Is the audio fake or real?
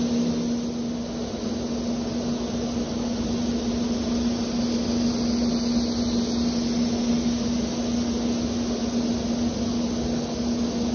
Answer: real